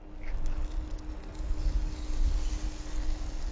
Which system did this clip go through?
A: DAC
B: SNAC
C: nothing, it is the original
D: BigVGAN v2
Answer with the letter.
C